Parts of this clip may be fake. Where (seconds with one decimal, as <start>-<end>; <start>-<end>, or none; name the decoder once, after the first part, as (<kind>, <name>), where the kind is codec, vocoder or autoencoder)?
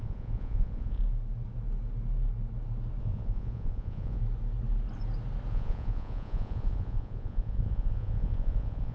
0.0-1.0 (vocoder, Vocos); 3.0-4.2; 5.5-8.9